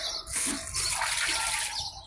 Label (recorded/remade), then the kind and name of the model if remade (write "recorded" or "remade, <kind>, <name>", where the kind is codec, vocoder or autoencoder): recorded